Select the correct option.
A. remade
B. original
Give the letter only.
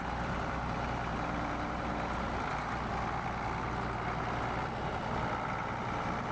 B